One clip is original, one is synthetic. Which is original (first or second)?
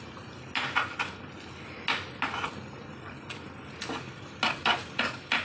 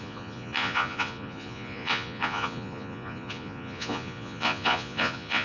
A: first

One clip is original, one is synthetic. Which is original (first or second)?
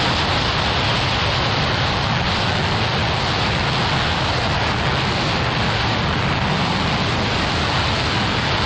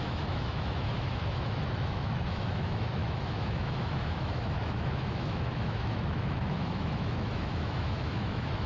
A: first